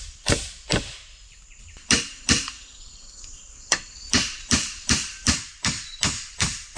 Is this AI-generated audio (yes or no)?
yes